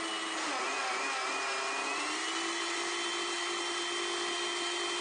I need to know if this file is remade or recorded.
recorded